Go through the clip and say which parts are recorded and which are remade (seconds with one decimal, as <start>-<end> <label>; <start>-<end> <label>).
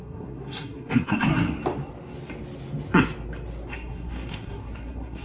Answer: 0.0-1.3 remade; 1.3-3.7 recorded; 3.7-5.2 remade